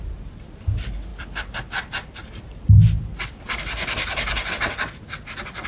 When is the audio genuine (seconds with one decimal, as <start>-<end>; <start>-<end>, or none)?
0.0-1.1; 4.5-5.7